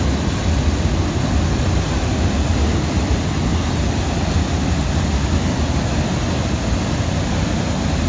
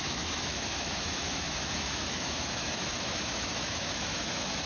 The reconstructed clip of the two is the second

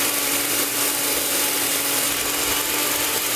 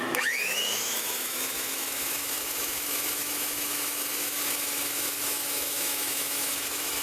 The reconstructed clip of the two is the second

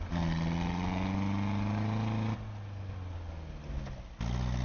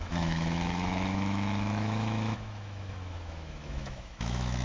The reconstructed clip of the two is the second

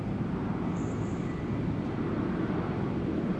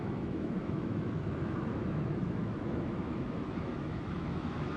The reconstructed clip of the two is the second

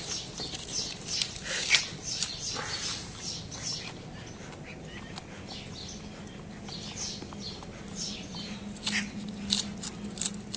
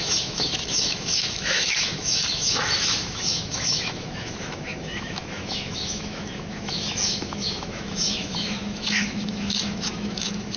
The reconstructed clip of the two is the second